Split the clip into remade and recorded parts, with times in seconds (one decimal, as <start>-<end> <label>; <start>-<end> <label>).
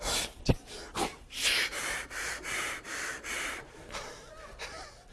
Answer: 0.0-1.1 recorded; 1.1-4.2 remade; 4.2-5.1 recorded